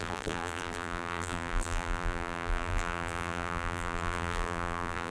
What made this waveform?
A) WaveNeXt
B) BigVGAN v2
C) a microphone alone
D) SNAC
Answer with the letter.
B